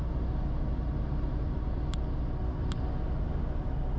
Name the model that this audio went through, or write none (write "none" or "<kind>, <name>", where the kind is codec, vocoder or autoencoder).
none